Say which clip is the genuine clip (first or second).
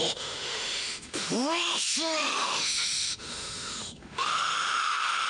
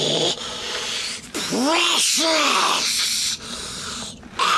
second